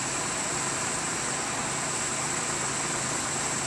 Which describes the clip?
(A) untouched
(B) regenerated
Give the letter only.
A